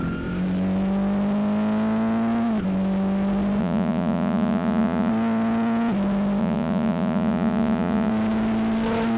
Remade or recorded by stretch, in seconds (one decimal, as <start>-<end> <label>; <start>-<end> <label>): 0.0-3.6 recorded; 3.6-5.1 remade; 5.1-6.4 recorded; 6.4-8.1 remade; 8.1-9.2 recorded